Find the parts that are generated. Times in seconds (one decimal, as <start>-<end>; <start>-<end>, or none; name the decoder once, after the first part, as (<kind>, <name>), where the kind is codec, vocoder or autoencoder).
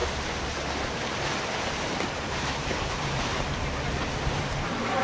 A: 0.0-3.3 (vocoder, BigVGAN v2); 4.3-5.0